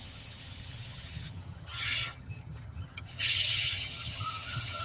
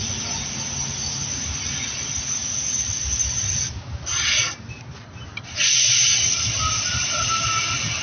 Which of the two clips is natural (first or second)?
second